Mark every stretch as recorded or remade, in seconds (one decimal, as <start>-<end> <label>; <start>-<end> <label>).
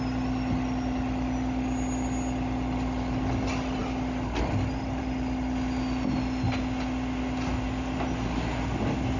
0.0-9.2 recorded